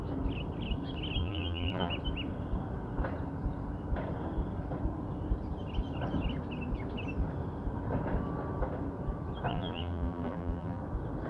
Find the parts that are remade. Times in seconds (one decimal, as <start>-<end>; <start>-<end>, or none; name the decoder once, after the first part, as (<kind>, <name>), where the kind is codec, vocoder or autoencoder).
1.2-1.9 (vocoder, BigVGAN v2); 9.5-10.8